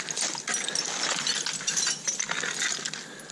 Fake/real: real